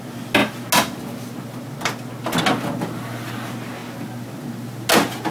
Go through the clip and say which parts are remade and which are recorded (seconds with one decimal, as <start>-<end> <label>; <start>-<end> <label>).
0.0-5.3 recorded